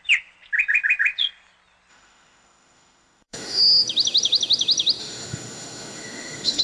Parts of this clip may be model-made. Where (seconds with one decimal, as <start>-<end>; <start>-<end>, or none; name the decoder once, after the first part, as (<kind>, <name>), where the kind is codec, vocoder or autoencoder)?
1.9-3.6 (autoencoder, DAC-VAE); 5.0-6.6